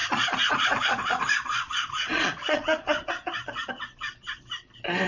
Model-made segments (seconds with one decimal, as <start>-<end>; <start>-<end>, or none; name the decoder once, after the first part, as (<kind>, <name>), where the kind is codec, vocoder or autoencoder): 0.0-3.1 (vocoder, Vocos)